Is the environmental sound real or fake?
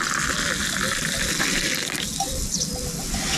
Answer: real